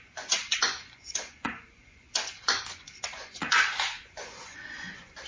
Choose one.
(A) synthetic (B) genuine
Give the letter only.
A